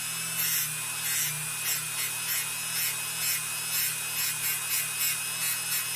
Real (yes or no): yes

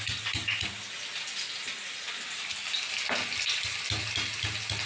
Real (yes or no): yes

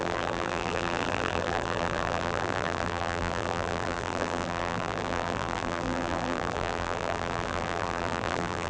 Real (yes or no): no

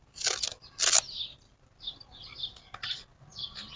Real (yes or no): yes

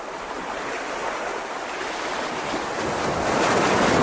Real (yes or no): yes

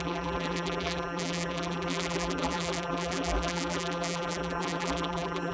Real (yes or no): no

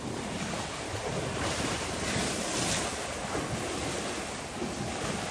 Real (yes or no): yes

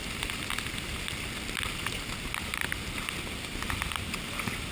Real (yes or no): yes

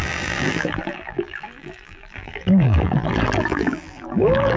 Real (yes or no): no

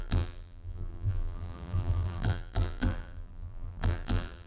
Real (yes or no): no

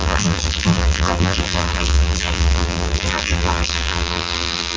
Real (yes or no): no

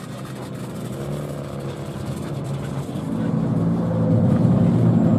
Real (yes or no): yes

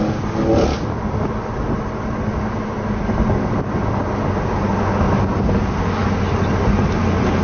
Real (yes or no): yes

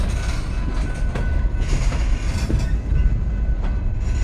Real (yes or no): yes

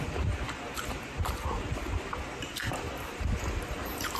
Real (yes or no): no